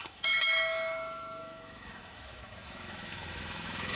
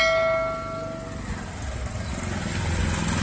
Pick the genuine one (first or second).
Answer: second